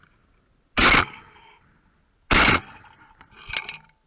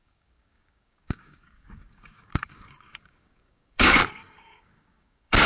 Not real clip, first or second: second